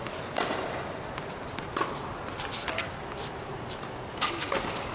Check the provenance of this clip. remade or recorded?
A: recorded